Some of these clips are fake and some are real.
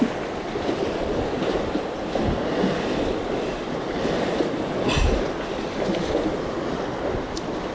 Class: real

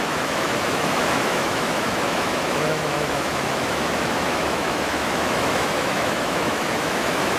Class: fake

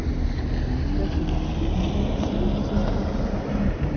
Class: real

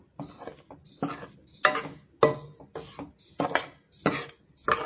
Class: real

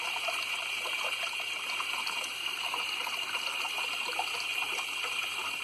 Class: real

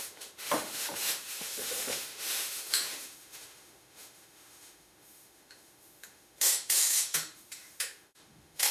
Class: fake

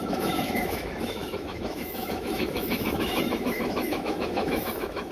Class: fake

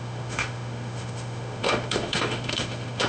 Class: fake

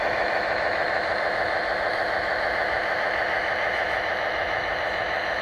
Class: fake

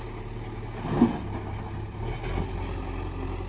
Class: real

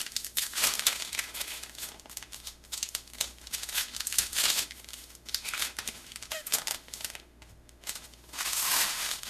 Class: fake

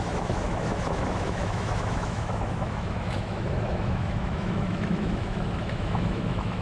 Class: fake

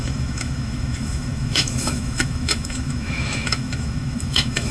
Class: fake